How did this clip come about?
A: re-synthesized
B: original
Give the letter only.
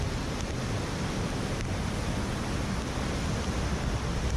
B